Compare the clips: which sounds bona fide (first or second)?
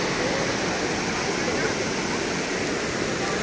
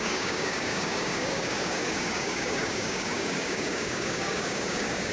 first